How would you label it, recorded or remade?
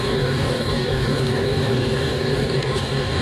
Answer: remade